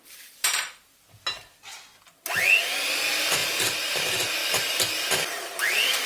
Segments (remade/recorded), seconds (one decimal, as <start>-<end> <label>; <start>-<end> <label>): 0.0-1.9 remade; 1.9-2.6 recorded; 2.6-4.4 remade; 4.4-5.4 recorded; 5.4-6.1 remade